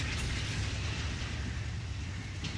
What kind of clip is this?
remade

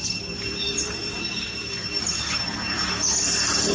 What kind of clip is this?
remade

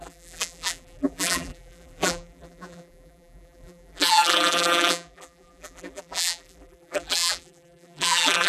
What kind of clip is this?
remade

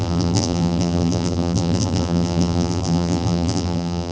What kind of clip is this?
remade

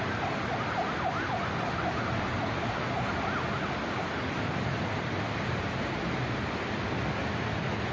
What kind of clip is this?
recorded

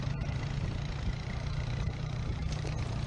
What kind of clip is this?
remade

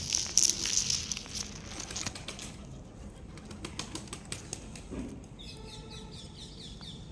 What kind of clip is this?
recorded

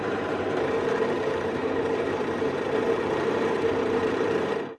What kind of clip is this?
remade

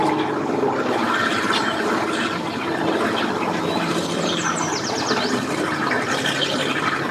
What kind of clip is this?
recorded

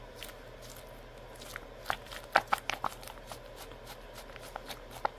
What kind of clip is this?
recorded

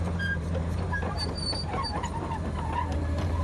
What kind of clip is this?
remade